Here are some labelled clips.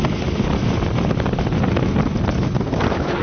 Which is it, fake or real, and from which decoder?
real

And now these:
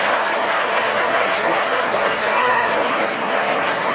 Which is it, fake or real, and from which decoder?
fake, codec, SNAC